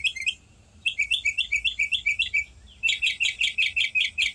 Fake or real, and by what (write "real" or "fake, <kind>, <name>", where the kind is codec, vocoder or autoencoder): real